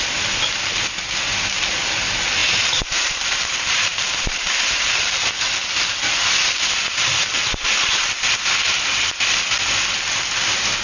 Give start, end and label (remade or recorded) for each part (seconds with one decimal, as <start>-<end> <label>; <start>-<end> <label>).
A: 0.0-2.4 recorded; 2.4-5.2 remade; 5.2-7.3 recorded; 7.3-8.0 remade; 8.0-10.8 recorded